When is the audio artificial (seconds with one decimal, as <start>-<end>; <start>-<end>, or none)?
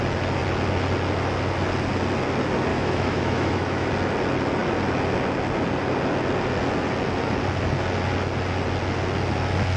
2.7-3.9